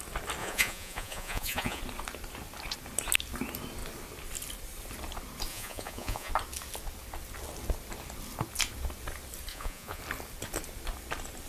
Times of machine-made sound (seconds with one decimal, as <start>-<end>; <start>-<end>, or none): 0.4-1.8; 5.5-6.3; 9.5-10.0